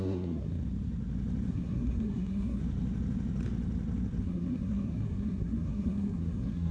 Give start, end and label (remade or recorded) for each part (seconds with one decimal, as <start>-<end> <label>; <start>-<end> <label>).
0.0-0.5 remade; 0.5-1.5 recorded; 1.5-2.6 remade; 2.6-4.2 recorded; 4.2-6.7 remade